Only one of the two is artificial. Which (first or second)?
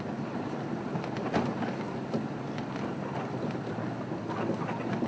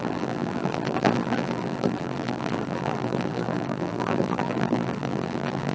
second